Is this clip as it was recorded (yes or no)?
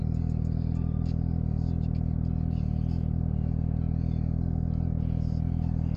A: yes